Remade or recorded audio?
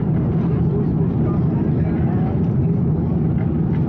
recorded